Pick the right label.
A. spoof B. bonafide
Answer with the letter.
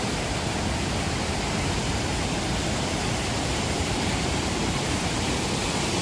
A